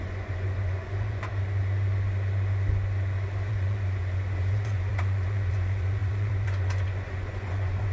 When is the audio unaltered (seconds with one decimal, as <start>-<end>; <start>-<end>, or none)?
1.3-3.5